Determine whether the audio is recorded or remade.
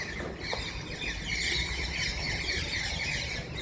recorded